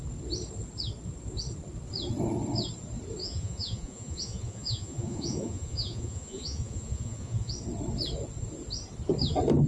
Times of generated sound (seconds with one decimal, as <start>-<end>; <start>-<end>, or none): 3.2-7.5